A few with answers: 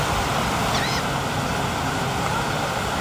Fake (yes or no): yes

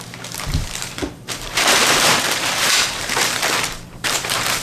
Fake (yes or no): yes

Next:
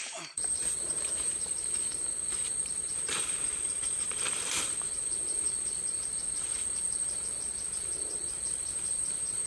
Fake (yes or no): yes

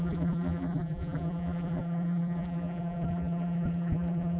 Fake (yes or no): yes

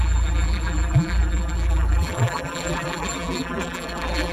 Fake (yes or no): yes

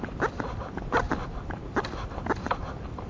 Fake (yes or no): no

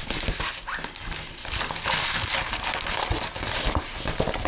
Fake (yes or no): no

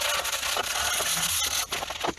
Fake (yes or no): no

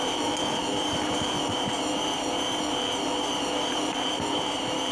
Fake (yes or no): yes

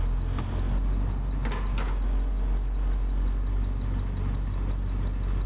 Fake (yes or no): no